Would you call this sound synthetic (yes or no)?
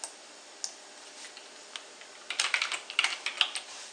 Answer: no